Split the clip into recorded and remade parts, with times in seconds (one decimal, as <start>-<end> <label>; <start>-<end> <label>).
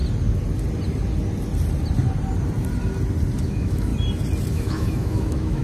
0.0-3.4 recorded; 3.4-3.9 remade; 3.9-4.5 recorded; 4.5-5.6 remade